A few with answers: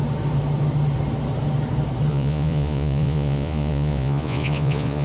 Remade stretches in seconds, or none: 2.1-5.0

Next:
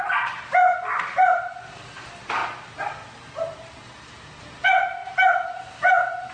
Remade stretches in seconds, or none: none

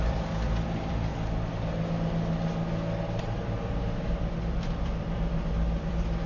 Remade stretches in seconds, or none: 0.0-1.1; 3.2-6.3

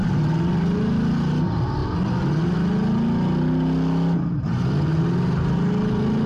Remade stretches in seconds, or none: none

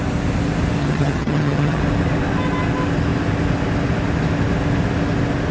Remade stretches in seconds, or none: 0.8-1.8

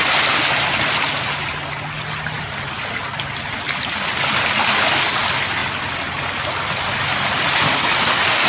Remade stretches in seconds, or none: none